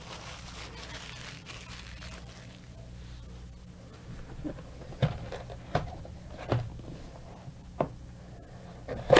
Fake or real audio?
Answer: real